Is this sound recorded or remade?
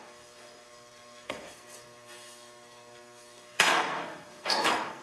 remade